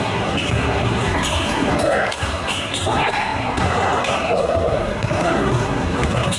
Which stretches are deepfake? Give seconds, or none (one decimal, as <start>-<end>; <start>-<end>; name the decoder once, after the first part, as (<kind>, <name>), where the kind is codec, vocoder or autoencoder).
0.0-6.4 (codec, SNAC)